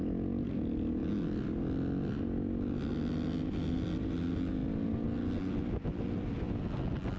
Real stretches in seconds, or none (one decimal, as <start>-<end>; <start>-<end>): 0.0-7.2